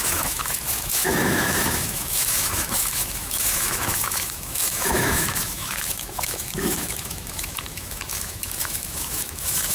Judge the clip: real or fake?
fake